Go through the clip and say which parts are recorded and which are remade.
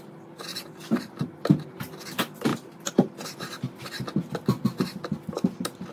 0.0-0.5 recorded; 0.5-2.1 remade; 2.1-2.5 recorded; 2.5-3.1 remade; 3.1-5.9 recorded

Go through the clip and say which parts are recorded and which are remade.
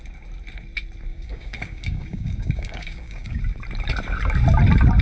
0.0-1.1 recorded; 1.1-3.4 remade; 3.4-5.0 recorded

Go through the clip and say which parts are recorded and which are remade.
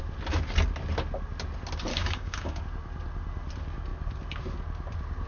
0.0-1.9 recorded; 1.9-2.6 remade; 2.6-5.3 recorded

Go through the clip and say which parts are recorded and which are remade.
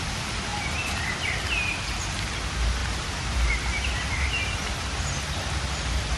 0.0-0.5 recorded; 0.5-1.1 remade; 1.1-2.8 recorded; 2.8-3.5 remade; 3.5-6.2 recorded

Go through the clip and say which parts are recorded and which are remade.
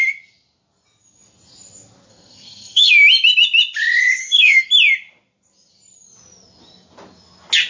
0.0-2.1 recorded; 2.1-2.9 remade; 2.9-4.2 recorded; 4.2-4.7 remade; 4.7-7.7 recorded